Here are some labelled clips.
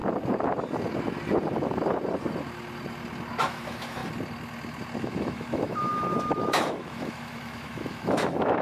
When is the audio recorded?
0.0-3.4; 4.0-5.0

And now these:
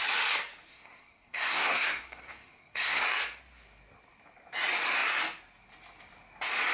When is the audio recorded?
0.0-0.7; 3.0-6.7

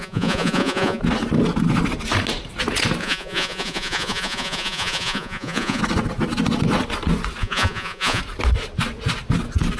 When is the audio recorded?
1.0-3.0; 5.8-7.4; 8.2-9.8

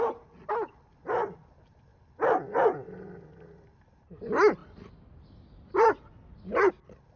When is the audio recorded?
0.0-7.2